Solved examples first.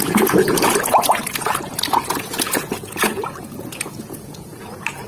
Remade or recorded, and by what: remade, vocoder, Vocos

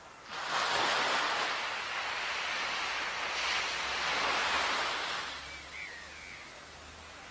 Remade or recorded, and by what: recorded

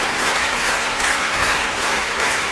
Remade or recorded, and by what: remade, codec, SNAC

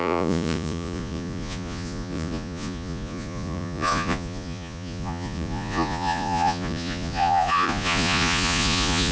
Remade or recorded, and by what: remade, vocoder, Vocos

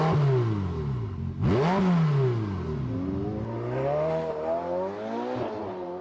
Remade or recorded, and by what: recorded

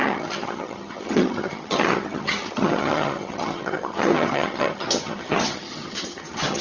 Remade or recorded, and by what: remade, vocoder, HiFi-GAN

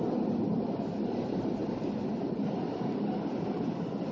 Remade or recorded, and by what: recorded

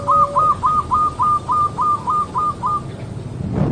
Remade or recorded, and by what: recorded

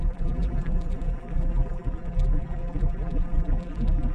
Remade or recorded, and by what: remade, vocoder, BigVGAN v2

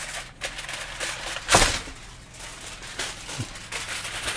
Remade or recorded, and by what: recorded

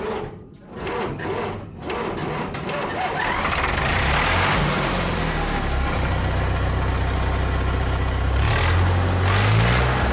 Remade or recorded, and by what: recorded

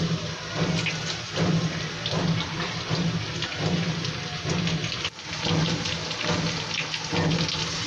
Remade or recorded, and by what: recorded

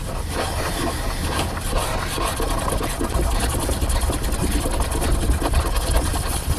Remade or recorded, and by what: recorded